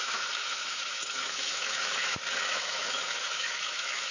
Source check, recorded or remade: remade